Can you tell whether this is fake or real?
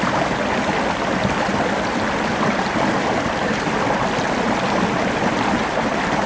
real